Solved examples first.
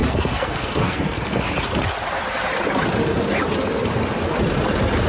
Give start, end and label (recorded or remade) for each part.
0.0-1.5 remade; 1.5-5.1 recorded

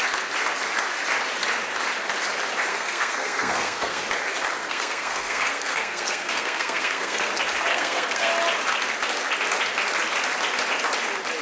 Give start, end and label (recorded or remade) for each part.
0.0-2.7 recorded; 2.7-4.0 remade; 4.0-4.6 recorded; 4.6-7.3 remade; 7.3-7.7 recorded; 7.7-8.3 remade; 8.3-11.4 recorded